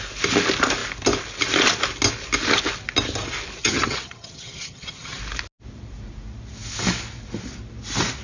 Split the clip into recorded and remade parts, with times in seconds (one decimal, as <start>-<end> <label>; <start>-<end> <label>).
0.0-3.6 recorded; 3.6-5.2 remade; 5.2-8.2 recorded